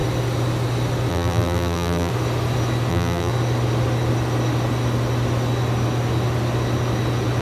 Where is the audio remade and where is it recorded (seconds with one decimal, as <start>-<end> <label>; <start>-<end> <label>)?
0.0-1.1 recorded; 1.1-2.1 remade; 2.1-2.9 recorded; 2.9-3.3 remade; 3.3-7.4 recorded